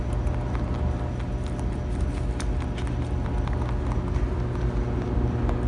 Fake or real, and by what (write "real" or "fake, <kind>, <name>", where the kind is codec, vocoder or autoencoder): real